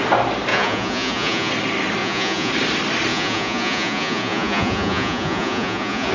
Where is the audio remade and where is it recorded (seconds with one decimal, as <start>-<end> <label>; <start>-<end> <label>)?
0.0-0.5 recorded; 0.5-1.5 remade; 1.5-2.0 recorded; 2.0-2.5 remade; 2.5-3.1 recorded; 3.1-6.1 remade